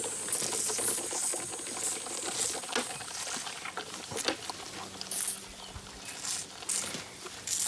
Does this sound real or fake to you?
real